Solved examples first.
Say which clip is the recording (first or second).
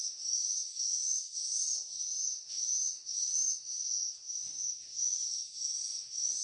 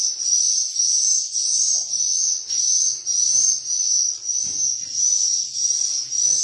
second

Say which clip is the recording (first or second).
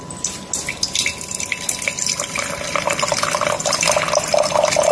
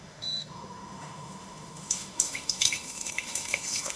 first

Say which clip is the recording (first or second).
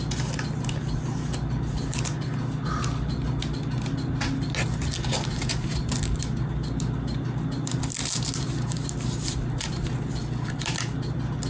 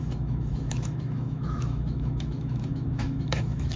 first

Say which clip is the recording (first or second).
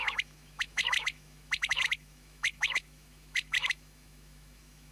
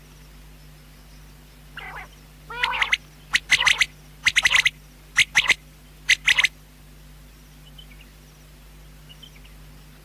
second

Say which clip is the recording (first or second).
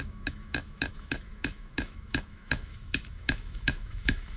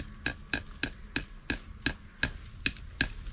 second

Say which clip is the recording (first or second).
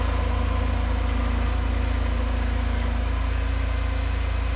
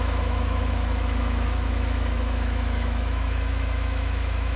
first